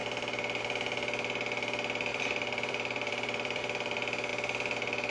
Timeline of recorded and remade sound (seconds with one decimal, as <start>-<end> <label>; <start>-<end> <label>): 0.0-2.1 recorded; 2.1-3.6 remade; 3.6-5.1 recorded